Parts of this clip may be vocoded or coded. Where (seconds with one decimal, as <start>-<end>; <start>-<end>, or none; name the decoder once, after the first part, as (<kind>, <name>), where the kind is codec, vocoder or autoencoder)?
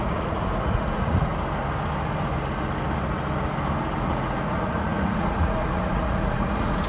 0.0-1.3 (vocoder, Vocos); 4.0-6.9